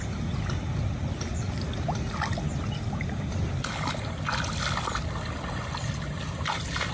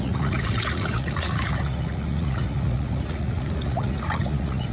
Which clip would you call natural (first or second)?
first